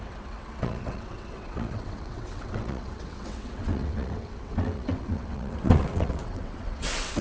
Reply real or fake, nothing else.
fake